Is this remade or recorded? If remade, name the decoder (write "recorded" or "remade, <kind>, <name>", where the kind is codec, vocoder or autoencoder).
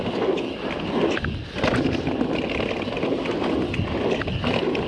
recorded